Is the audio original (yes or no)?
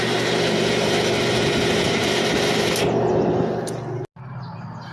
yes